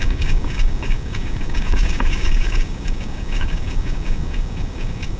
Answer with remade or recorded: remade